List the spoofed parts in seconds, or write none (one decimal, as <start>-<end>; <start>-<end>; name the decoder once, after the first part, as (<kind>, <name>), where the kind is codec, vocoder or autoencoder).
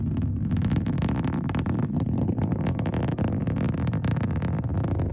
1.8-2.6 (codec, HILCodec)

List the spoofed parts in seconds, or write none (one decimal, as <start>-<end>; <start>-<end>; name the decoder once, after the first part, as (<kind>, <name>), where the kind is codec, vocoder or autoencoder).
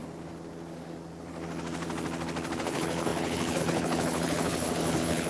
2.6-5.3 (codec, HILCodec)